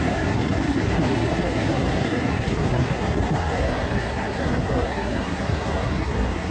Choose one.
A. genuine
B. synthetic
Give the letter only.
B